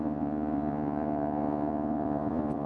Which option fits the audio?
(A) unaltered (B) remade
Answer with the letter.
B